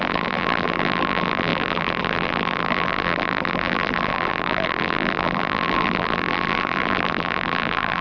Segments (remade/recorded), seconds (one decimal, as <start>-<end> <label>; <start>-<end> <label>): 0.0-8.0 remade